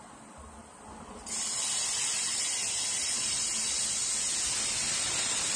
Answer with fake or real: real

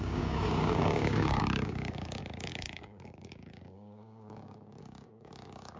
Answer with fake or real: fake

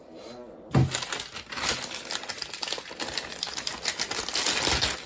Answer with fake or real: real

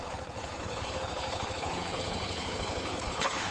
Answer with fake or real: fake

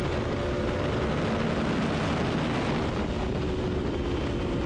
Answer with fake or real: real